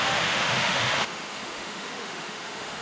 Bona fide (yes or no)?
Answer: no